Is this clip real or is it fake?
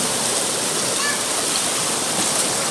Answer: real